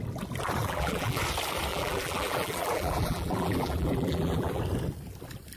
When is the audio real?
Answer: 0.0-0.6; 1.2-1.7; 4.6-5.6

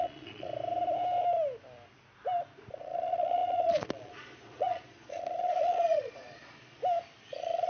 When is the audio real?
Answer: 0.5-2.7; 6.8-7.3

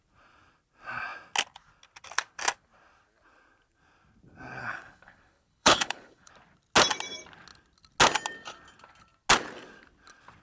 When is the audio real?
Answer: 0.0-4.6; 6.3-10.4

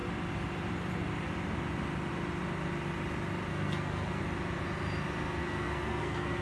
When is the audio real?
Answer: 0.0-3.5; 4.2-5.4

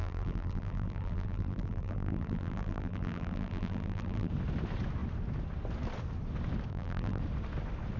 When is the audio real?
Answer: 4.3-6.7; 7.2-8.0

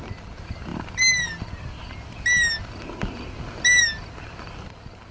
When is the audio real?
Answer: 0.0-5.1

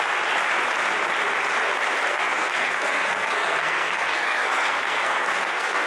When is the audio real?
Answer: 0.0-2.1